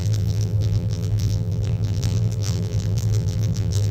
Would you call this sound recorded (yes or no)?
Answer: no